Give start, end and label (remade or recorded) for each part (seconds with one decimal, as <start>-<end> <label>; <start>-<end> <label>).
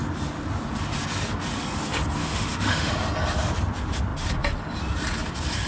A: 0.0-2.2 recorded; 2.2-2.9 remade; 2.9-5.7 recorded